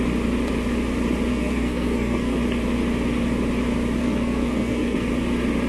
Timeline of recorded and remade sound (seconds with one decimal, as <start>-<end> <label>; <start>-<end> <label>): 0.0-1.3 recorded; 1.3-2.4 remade; 2.4-4.0 recorded; 4.0-5.1 remade; 5.1-5.7 recorded